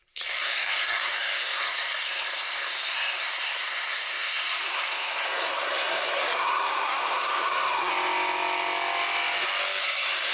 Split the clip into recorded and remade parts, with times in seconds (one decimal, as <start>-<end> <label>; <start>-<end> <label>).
0.0-7.9 remade; 7.9-9.8 recorded; 9.8-10.3 remade